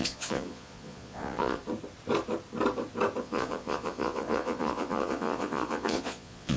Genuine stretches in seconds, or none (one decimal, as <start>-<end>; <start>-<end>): 1.6-3.2

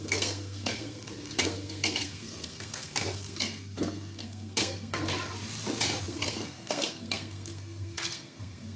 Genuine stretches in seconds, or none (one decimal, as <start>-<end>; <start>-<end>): 5.1-6.0

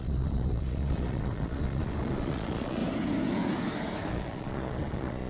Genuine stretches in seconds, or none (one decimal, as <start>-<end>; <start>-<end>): 2.8-4.1

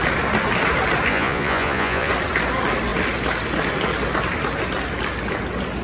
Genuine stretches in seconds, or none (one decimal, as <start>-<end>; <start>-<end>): 0.0-1.1; 2.1-5.8

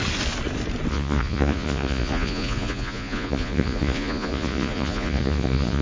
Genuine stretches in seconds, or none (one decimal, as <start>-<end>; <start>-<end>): 0.0-0.9

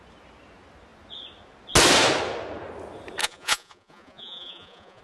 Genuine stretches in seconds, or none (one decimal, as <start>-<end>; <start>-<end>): 0.0-3.2

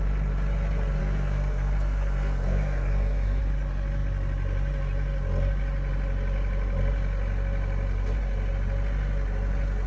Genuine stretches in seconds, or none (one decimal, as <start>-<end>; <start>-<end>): 0.0-1.0; 3.4-9.9